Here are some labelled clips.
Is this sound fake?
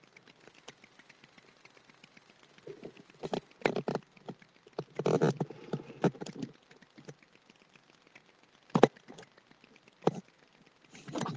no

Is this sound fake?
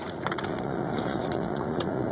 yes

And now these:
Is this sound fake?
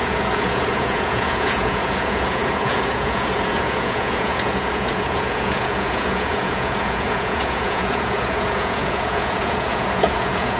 yes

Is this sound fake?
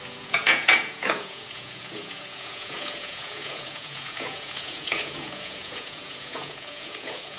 yes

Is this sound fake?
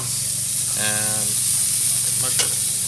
no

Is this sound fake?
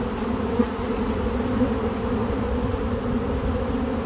no